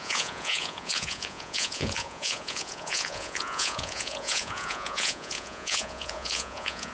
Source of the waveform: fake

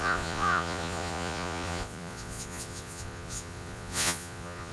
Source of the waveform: fake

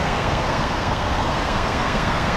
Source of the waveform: fake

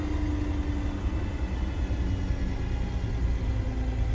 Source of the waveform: real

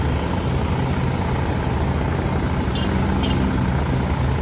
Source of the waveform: real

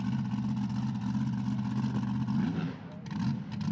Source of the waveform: real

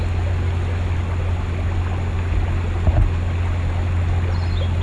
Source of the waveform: real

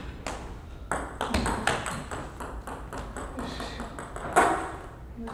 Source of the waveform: real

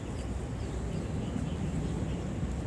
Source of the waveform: real